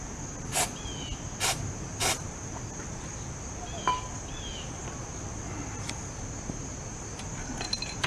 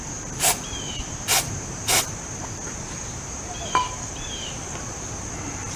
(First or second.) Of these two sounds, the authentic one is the first